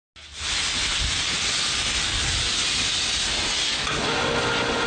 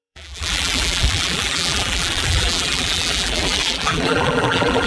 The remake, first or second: second